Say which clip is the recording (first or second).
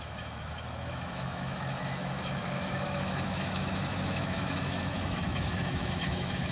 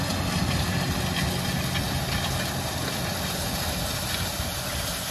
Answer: second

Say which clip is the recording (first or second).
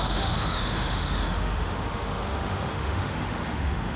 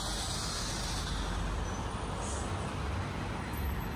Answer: second